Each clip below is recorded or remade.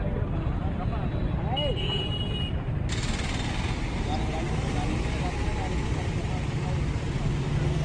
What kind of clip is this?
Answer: recorded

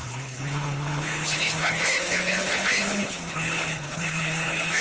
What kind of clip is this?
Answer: remade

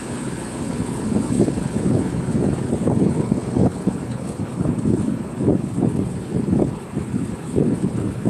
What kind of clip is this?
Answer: remade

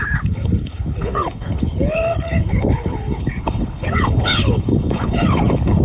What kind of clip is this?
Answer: remade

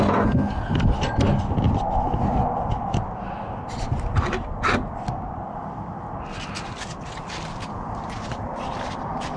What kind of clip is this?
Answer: recorded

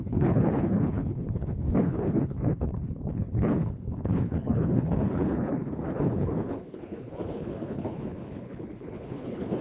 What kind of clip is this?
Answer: remade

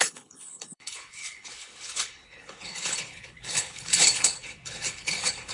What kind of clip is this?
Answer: remade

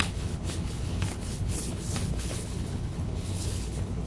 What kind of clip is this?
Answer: remade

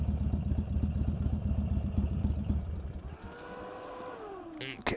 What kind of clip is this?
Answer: recorded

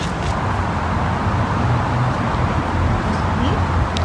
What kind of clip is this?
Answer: recorded